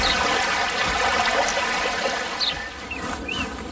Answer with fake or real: real